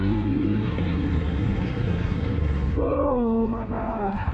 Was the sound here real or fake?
fake